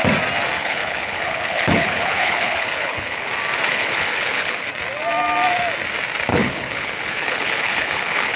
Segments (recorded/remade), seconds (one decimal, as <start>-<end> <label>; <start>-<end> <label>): 0.0-0.6 recorded; 0.6-3.3 remade; 3.3-3.7 recorded; 3.7-4.7 remade; 4.7-6.3 recorded; 6.3-8.4 remade